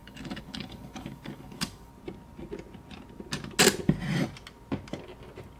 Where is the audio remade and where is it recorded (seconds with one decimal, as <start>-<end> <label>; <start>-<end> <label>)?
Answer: 0.0-1.9 remade; 1.9-5.6 recorded